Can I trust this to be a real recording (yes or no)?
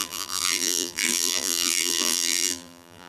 no